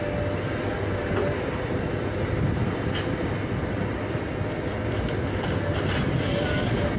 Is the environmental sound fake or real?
real